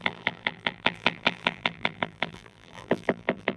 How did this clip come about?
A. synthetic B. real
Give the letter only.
A